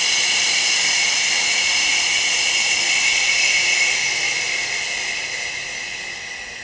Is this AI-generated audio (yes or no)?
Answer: no